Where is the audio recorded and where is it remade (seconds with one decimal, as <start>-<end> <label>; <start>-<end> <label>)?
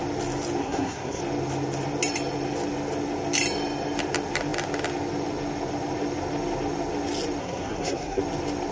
0.0-0.6 recorded; 0.6-1.2 remade; 1.2-7.4 recorded; 7.4-8.2 remade; 8.2-8.7 recorded